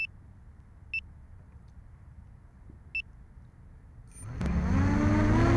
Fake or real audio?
real